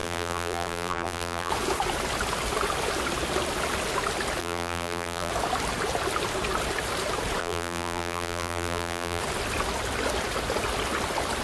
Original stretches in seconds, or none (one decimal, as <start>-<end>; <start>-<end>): 1.5-4.4; 5.3-7.4; 9.2-11.4

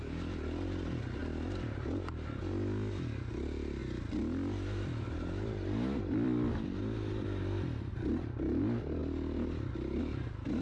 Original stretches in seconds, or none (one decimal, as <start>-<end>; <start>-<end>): 0.0-3.8; 7.9-10.6

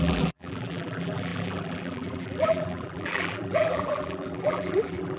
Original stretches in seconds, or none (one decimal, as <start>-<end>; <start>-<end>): none

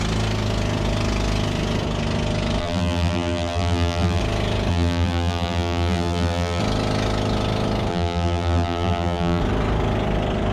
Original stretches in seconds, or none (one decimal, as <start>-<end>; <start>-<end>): 0.0-2.6; 4.2-4.7; 6.6-7.9; 9.4-10.5